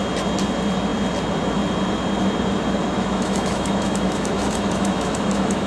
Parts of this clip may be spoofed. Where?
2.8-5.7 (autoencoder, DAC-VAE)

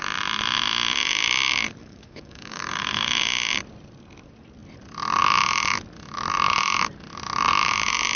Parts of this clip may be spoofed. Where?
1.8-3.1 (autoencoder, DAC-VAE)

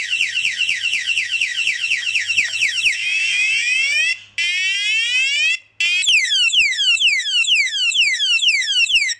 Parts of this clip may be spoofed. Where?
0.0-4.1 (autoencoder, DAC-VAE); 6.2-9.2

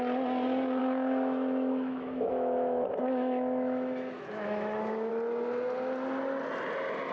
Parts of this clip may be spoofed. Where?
0.8-5.1 (autoencoder, DAC-VAE)

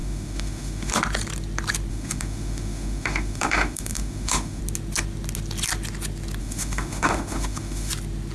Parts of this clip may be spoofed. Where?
0.0-0.9 (autoencoder, DAC-VAE); 1.9-4.6; 6.4-7.9

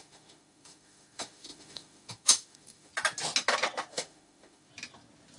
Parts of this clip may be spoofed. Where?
0.0-2.9 (autoencoder, DAC-VAE); 3.9-4.7

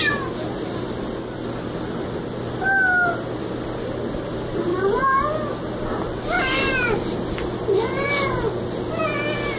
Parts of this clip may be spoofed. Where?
none

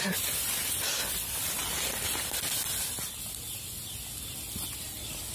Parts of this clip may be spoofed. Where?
none